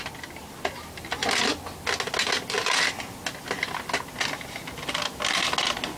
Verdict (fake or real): real